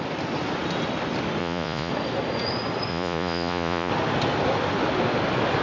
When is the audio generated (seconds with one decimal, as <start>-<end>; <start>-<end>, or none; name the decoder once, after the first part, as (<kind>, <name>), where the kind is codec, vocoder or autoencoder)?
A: 1.4-1.9 (vocoder, Vocos); 2.9-3.9